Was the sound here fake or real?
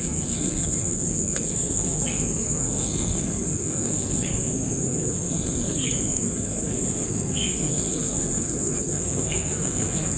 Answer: fake